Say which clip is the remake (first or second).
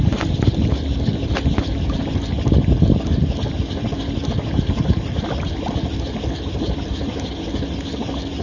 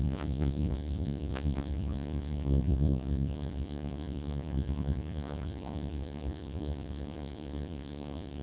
second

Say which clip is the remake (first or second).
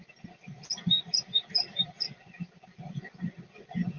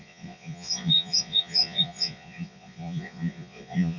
second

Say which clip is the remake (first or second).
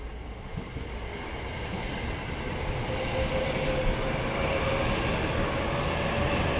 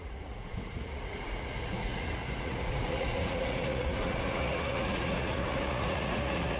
second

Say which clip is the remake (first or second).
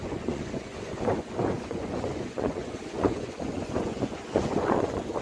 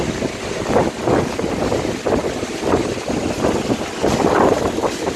first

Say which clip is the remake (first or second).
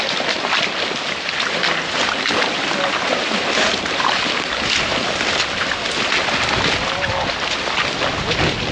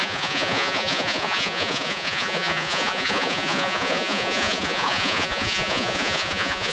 second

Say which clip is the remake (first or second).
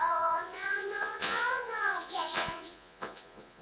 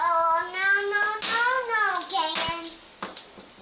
first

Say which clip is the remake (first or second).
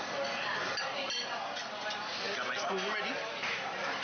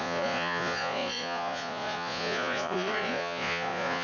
second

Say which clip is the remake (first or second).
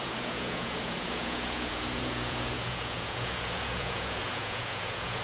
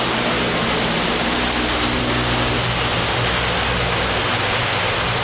first